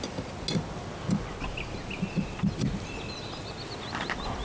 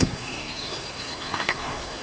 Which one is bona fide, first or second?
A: first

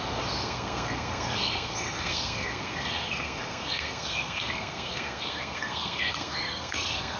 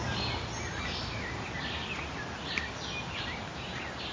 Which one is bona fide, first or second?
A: second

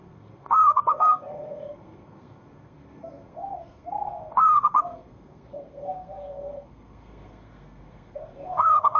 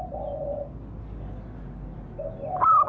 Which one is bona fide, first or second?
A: second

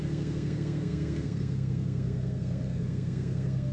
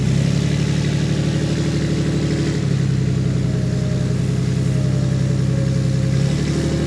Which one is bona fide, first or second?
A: second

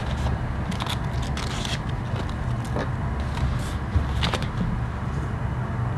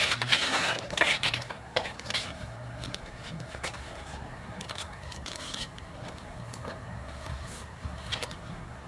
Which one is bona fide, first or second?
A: first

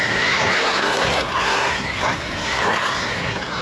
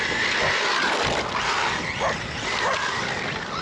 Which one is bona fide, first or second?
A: second